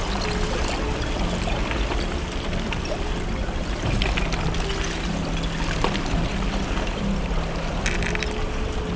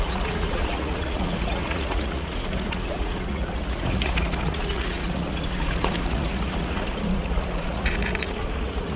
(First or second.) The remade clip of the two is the second